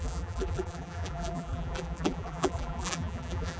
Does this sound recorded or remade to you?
remade